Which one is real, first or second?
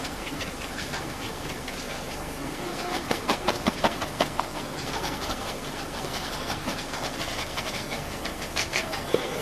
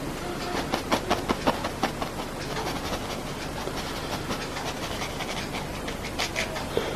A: second